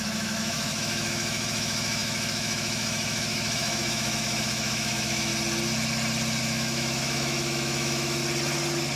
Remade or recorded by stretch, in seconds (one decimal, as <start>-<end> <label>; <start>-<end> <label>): 0.0-5.3 remade; 5.3-6.4 recorded; 6.4-8.2 remade; 8.2-9.0 recorded